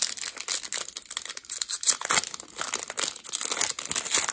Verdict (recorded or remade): recorded